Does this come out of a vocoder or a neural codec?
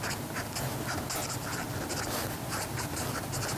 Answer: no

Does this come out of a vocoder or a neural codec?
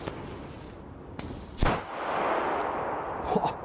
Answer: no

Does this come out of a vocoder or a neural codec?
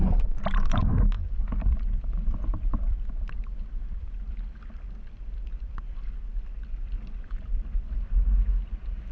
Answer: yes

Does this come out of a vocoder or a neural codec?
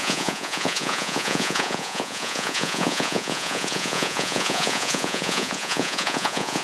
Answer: yes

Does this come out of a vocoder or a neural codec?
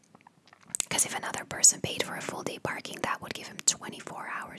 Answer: no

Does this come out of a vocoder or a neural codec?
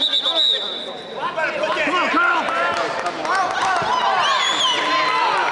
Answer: no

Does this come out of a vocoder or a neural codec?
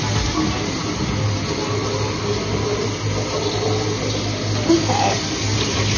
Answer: no